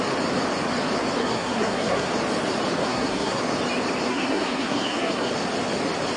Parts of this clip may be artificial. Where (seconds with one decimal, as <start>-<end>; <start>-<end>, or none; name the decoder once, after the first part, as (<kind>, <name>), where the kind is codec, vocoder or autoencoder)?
1.2-2.1 (codec, SNAC); 2.8-3.4; 4.1-5.3